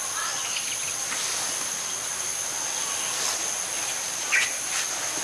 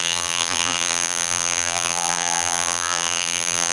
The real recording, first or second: first